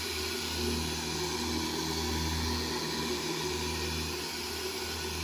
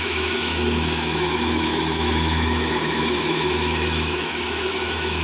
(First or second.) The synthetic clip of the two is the second